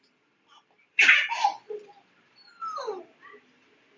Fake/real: fake